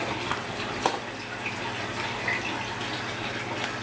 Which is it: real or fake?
real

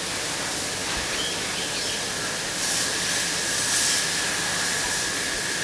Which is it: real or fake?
real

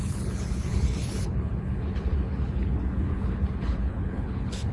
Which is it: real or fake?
fake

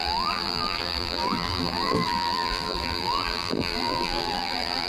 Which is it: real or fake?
fake